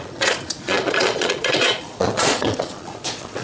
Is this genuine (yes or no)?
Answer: no